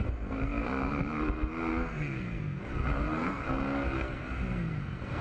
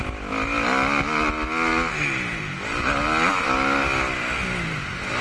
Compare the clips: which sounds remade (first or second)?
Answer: first